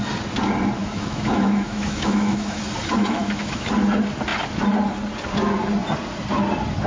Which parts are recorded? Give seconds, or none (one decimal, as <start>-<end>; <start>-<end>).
0.0-0.8; 2.6-3.0; 3.7-6.9